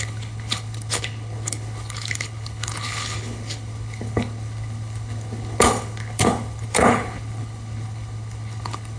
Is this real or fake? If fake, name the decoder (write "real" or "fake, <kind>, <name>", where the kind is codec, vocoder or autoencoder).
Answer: fake, codec, HILCodec